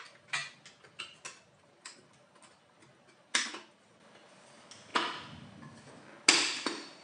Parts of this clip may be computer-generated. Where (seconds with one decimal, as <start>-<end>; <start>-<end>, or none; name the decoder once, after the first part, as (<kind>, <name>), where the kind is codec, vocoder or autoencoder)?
none